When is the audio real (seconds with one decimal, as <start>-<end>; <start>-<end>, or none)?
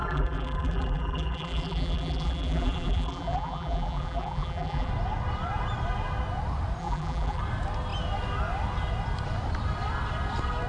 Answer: 4.9-6.8; 7.4-10.7